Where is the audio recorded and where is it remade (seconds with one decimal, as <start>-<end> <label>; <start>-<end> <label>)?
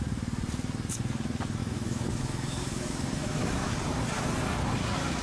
0.0-1.6 recorded; 1.6-3.7 remade; 3.7-5.2 recorded